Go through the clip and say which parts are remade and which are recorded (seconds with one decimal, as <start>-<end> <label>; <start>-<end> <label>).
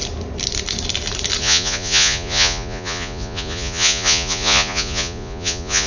0.0-1.4 recorded; 1.4-5.9 remade